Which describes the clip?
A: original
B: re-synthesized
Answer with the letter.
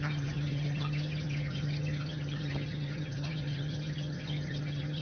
B